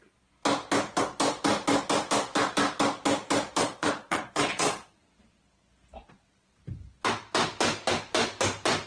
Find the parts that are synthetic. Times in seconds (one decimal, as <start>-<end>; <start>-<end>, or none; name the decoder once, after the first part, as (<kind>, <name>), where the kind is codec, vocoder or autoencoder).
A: 3.6-5.1 (vocoder, Vocos)